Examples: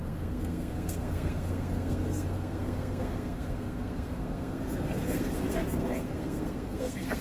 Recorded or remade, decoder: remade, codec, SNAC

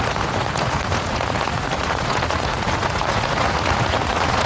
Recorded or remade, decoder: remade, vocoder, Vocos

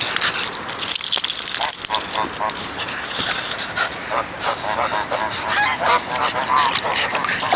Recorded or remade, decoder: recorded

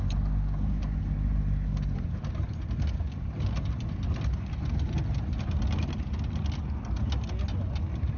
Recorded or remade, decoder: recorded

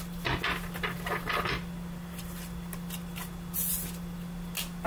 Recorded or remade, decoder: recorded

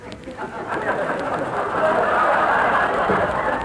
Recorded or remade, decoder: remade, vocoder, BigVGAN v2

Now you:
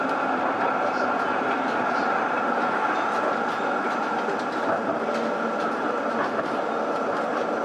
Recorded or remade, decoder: recorded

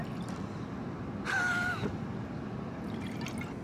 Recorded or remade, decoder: recorded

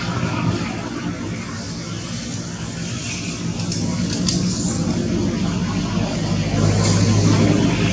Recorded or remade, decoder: recorded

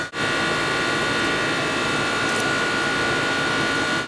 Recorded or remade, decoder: recorded